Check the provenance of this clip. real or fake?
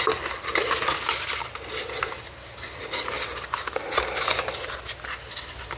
real